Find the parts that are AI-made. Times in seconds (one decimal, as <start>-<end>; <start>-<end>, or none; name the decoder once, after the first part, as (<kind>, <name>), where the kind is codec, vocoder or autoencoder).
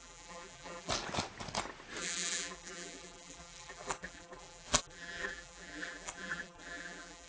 0.0-0.9 (vocoder, BigVGAN v2); 2.0-7.3